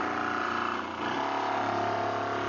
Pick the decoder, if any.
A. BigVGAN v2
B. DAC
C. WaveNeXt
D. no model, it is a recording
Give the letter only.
D